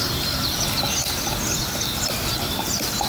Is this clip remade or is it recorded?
recorded